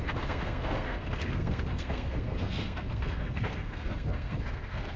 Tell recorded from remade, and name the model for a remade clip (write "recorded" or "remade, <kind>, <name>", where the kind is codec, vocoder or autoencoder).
remade, codec, SNAC